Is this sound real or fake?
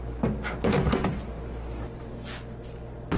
real